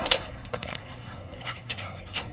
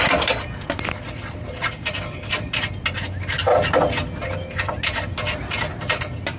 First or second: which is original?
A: second